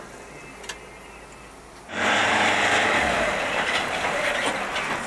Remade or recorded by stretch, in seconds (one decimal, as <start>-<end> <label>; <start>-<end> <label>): 0.0-2.2 recorded; 2.2-4.5 remade; 4.5-5.1 recorded